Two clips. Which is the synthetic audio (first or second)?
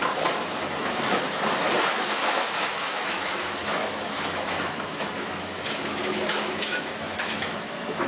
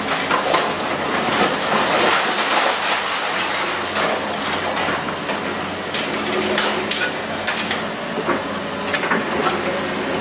first